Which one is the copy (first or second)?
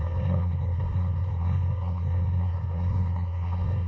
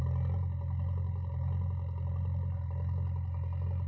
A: first